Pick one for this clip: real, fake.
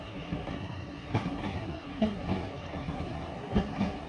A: fake